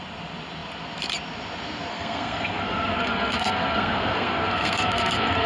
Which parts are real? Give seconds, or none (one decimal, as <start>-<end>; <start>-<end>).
0.0-1.9